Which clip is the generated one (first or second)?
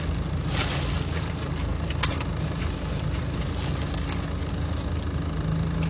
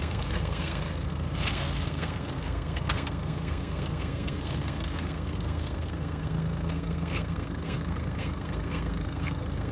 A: second